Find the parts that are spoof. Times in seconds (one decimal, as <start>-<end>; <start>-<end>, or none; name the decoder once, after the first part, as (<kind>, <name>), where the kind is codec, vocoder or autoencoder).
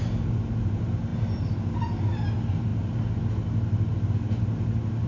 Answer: none